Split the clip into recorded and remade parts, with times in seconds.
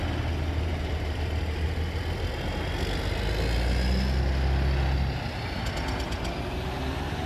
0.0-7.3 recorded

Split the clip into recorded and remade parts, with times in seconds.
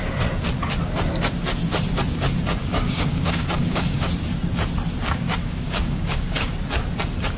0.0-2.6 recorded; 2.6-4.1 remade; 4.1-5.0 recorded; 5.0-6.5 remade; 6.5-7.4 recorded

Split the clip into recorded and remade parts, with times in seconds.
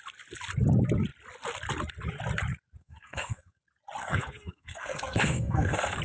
0.0-2.8 recorded; 2.8-3.6 remade; 3.6-4.0 recorded; 4.0-6.0 remade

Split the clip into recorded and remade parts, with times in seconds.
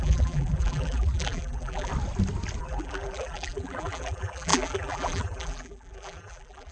0.0-1.9 remade; 1.9-2.6 recorded; 2.6-6.7 remade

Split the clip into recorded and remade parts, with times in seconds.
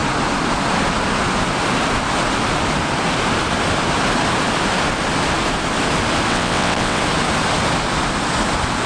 0.0-6.3 recorded; 6.3-7.0 remade; 7.0-8.9 recorded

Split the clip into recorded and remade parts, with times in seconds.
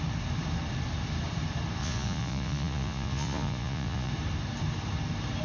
0.0-1.8 recorded; 1.8-4.1 remade; 4.1-5.4 recorded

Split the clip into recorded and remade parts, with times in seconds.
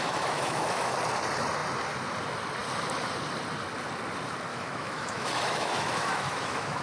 0.0-0.9 remade; 0.9-4.5 recorded; 4.5-6.8 remade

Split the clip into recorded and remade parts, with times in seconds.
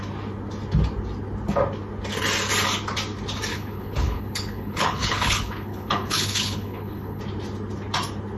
0.0-3.5 recorded; 3.5-7.2 remade; 7.2-8.4 recorded